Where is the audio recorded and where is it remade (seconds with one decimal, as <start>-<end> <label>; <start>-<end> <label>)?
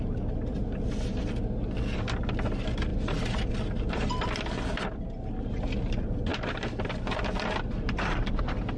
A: 0.0-2.9 recorded; 2.9-3.5 remade; 3.5-8.8 recorded